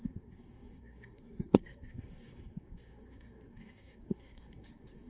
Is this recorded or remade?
remade